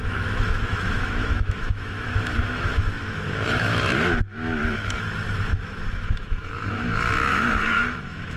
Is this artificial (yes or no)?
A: yes